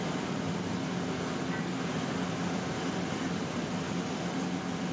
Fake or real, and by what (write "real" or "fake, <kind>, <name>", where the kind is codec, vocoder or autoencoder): real